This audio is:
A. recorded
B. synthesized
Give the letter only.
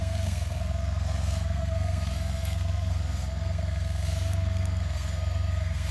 B